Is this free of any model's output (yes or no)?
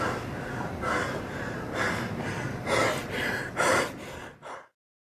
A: yes